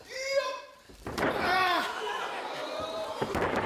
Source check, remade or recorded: remade